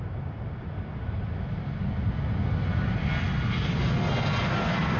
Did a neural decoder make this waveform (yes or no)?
no